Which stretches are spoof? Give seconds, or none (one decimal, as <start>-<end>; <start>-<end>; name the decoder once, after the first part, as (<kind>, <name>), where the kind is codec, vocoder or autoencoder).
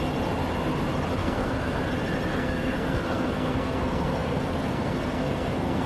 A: 1.2-1.8 (codec, SNAC); 2.3-5.9